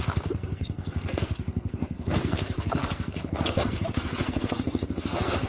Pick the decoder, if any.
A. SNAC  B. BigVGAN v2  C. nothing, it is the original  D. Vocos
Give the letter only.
A